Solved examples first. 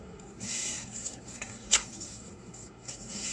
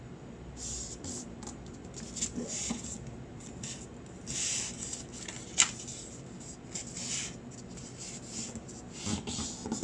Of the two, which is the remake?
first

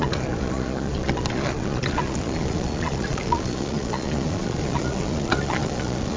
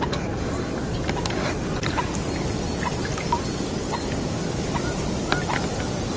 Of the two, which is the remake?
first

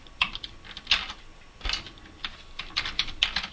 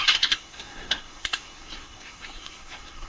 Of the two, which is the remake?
second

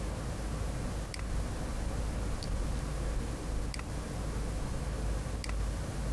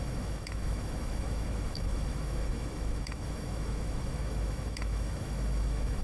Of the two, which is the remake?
second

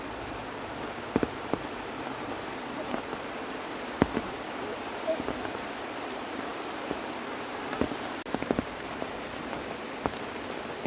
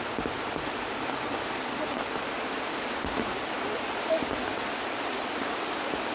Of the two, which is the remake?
first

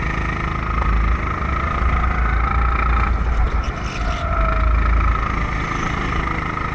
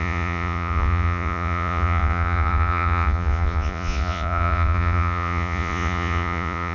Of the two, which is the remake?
second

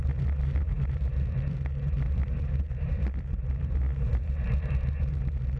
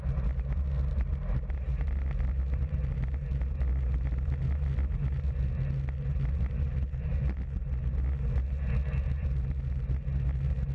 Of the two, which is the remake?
first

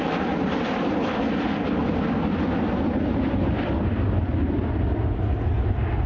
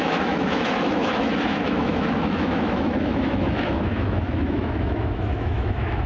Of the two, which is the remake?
second